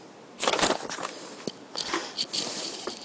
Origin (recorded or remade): recorded